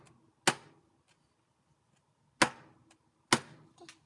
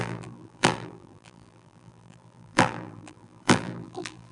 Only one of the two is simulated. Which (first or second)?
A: second